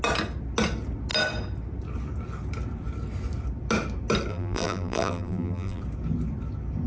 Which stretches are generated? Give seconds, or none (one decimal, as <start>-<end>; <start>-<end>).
4.3-5.8

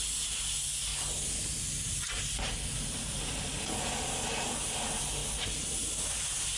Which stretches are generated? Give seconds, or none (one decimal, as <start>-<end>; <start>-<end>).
0.9-4.7; 5.2-6.6

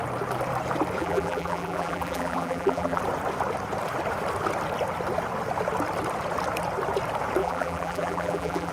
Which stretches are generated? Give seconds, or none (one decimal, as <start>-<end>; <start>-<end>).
1.0-3.0; 7.4-8.7